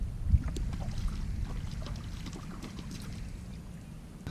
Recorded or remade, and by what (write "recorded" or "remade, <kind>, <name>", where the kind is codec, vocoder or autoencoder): recorded